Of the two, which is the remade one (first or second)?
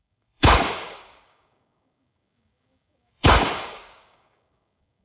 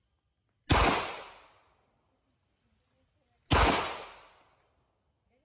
first